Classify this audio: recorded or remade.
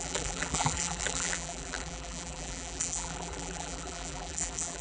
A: remade